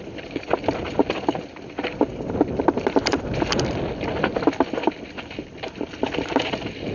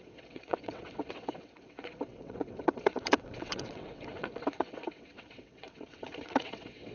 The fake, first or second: second